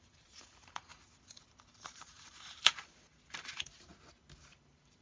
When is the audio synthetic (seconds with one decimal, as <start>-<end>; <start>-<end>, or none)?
0.0-3.9; 4.4-5.0